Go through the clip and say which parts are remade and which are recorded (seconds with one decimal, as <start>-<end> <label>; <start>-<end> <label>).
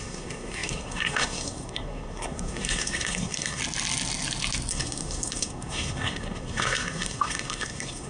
0.0-3.6 remade; 3.6-4.7 recorded; 4.7-8.1 remade